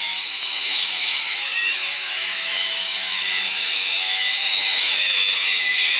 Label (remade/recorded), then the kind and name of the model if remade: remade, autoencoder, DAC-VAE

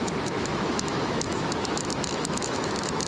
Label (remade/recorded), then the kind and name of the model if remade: remade, autoencoder, DAC-VAE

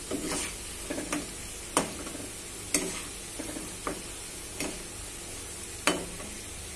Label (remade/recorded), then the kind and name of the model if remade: recorded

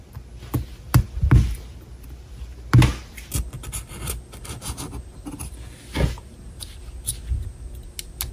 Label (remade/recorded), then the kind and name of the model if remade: recorded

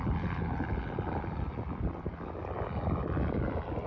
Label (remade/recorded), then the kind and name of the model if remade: recorded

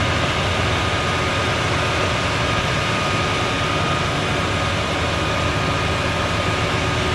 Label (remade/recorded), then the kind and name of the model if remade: recorded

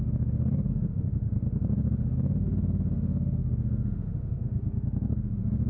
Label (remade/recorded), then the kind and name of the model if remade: remade, autoencoder, DAC-VAE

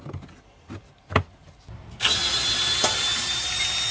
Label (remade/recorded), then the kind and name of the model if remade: recorded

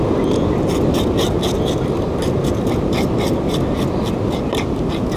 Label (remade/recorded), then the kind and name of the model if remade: recorded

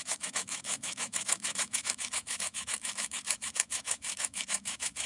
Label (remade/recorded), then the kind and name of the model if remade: remade, autoencoder, DAC-VAE